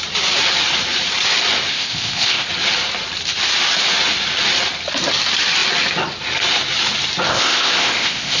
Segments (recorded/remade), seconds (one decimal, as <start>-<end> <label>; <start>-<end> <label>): 0.0-1.7 recorded; 1.7-2.5 remade; 2.5-7.3 recorded; 7.3-8.4 remade